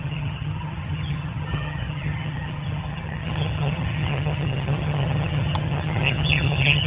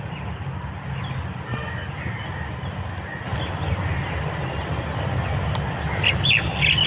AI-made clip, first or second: first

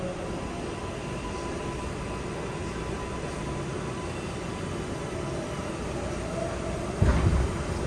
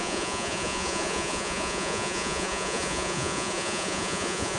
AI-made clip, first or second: second